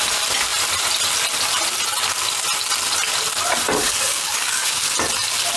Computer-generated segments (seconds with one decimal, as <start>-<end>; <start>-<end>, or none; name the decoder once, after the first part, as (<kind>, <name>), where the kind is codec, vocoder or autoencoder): 3.8-4.8 (codec, DAC)